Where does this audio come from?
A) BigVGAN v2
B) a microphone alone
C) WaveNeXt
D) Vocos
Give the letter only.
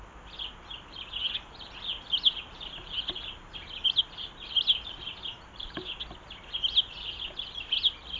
B